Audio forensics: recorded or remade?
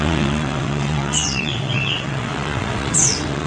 remade